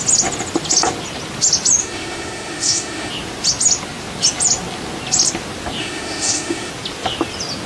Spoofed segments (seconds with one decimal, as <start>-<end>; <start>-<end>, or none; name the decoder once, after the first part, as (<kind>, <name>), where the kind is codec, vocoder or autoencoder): 1.8-3.1 (autoencoder, DAC-VAE); 5.8-6.7